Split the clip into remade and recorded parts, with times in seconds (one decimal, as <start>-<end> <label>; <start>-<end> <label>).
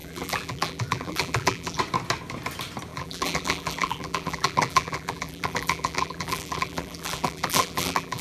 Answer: 0.0-1.8 remade; 1.8-2.9 recorded; 2.9-8.2 remade